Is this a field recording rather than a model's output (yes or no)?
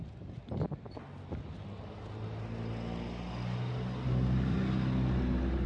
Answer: yes